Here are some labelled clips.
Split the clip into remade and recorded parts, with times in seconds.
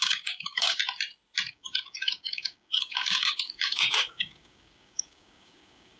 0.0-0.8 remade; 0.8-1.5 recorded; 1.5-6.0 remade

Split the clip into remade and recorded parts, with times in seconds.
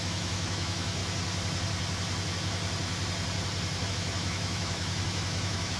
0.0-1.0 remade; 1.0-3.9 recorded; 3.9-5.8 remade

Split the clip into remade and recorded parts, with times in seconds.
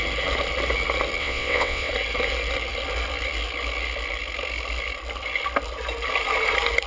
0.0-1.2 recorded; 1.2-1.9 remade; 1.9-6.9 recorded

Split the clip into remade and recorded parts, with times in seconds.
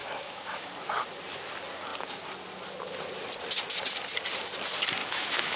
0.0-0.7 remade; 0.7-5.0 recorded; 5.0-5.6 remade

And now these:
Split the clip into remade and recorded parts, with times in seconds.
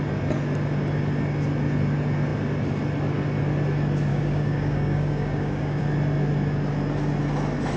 0.0-4.1 recorded; 4.1-5.8 remade; 5.8-7.8 recorded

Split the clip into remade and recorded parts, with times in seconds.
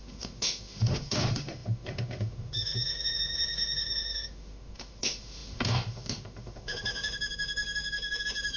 0.0-8.6 remade